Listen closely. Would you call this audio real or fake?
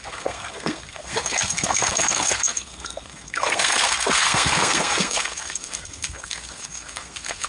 fake